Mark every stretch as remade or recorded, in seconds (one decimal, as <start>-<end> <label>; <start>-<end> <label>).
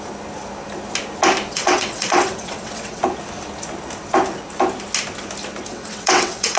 0.0-1.5 recorded; 1.5-3.0 remade; 3.0-5.7 recorded; 5.7-6.6 remade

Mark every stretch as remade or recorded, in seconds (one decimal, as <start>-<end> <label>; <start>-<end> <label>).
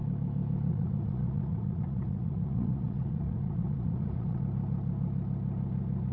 0.0-0.7 recorded; 0.7-4.4 remade; 4.4-6.1 recorded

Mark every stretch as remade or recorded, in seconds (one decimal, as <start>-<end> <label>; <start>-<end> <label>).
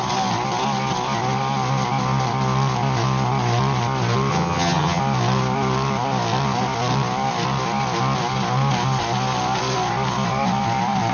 0.0-4.3 recorded; 4.3-5.0 remade; 5.0-11.1 recorded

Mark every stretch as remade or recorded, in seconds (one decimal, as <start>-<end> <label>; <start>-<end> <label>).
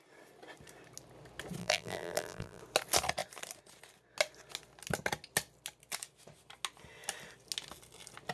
0.0-1.6 recorded; 1.6-2.6 remade; 2.6-8.3 recorded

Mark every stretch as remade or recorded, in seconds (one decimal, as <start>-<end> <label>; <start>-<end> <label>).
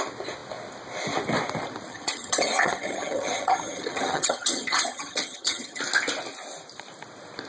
0.0-1.9 recorded; 1.9-5.8 remade; 5.8-7.5 recorded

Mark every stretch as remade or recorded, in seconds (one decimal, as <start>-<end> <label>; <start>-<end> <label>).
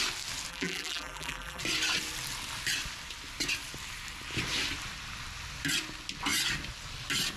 0.0-0.5 recorded; 0.5-1.6 remade; 1.6-7.4 recorded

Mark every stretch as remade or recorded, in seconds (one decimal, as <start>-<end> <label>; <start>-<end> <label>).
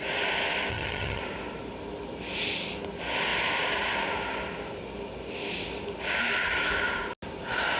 0.0-0.7 recorded; 0.7-1.2 remade; 1.2-7.8 recorded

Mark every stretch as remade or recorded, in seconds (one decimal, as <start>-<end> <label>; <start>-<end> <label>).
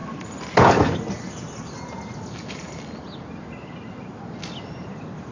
0.0-5.3 recorded